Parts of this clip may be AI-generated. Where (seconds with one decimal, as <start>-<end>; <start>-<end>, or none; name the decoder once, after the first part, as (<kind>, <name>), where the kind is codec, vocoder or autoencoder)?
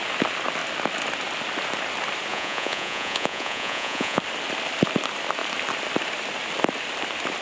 2.3-4.2 (vocoder, Vocos)